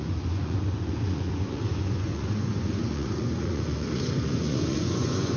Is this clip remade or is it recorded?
remade